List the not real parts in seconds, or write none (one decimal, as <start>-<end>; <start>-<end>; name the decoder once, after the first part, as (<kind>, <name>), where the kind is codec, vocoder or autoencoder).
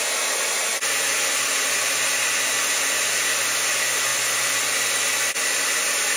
4.1-5.7 (vocoder, BigVGAN v2)